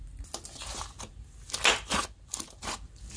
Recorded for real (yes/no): yes